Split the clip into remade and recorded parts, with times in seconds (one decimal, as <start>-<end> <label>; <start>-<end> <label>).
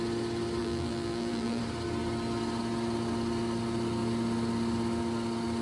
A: 0.0-0.6 recorded; 0.6-1.6 remade; 1.6-5.6 recorded